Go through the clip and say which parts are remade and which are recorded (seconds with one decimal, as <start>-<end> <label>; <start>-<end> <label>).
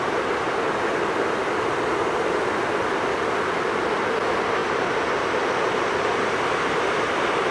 0.0-7.5 recorded